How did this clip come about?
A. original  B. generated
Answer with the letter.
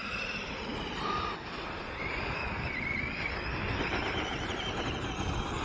A